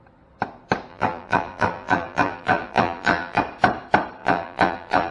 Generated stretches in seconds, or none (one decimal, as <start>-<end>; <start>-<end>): 0.9-3.4; 4.2-5.1